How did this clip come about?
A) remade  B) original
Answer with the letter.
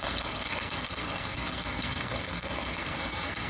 A